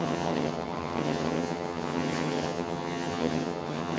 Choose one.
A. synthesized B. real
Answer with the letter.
A